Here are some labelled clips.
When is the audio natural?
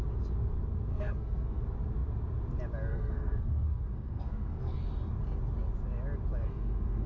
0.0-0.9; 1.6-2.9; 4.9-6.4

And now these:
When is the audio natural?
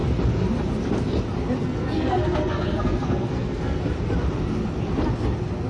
0.0-1.6; 3.8-5.7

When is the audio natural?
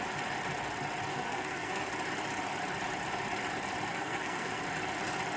0.0-1.1; 1.8-3.9; 4.6-5.4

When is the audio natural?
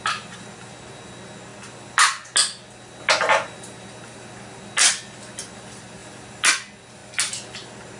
0.0-8.0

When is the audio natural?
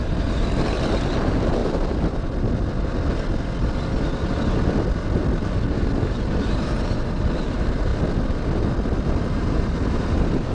1.6-6.0; 7.9-9.3